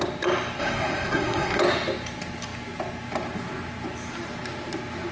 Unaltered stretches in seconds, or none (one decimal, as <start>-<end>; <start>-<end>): 0.0-0.6; 1.6-5.1

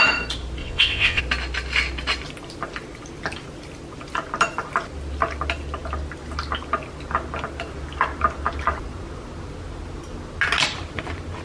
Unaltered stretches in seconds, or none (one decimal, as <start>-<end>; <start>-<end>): 0.0-0.6; 1.2-11.4

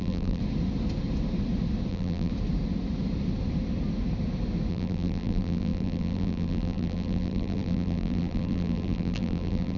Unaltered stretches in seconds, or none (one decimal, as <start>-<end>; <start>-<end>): 0.4-1.9; 2.3-4.7

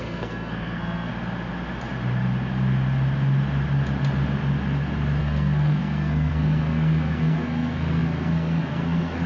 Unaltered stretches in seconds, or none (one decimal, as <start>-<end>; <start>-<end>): 1.1-5.2

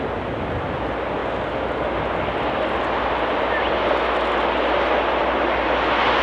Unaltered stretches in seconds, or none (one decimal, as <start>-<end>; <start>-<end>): 0.0-6.2

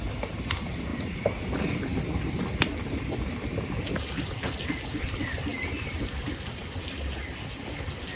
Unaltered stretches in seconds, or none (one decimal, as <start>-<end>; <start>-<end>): 0.0-8.2

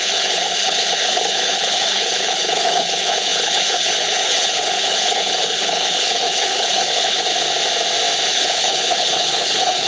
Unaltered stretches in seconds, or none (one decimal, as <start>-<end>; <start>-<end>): 7.3-8.3